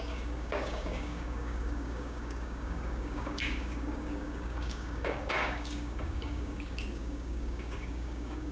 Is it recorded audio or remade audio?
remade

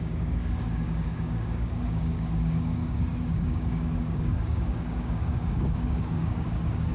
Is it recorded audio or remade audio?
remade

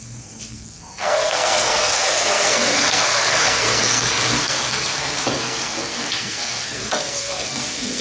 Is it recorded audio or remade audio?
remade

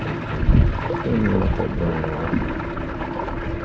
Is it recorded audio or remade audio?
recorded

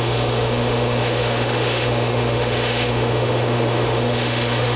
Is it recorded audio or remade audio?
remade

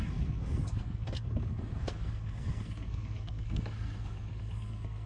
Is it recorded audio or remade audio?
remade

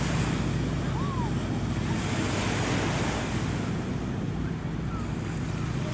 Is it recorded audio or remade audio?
recorded